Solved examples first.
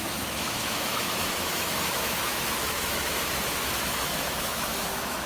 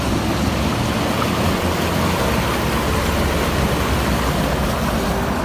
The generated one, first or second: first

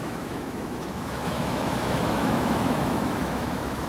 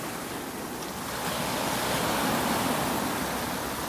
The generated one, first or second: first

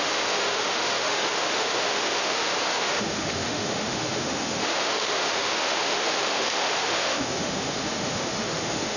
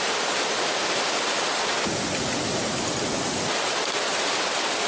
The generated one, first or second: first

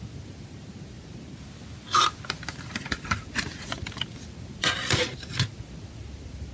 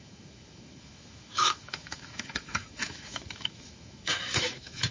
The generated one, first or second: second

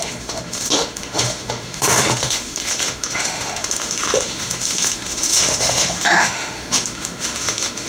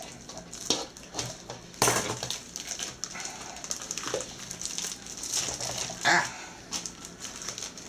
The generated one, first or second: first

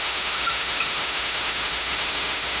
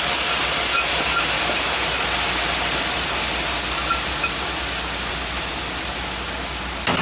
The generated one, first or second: first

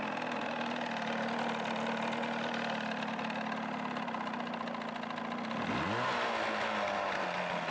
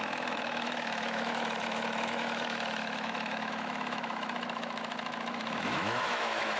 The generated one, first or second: second